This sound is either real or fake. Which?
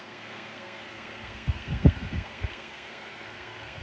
fake